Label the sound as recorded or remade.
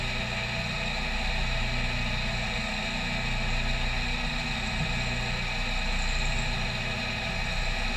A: recorded